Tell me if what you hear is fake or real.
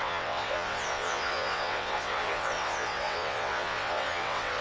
fake